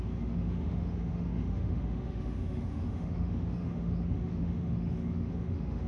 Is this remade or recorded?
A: remade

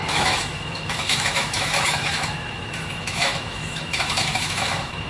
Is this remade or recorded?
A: remade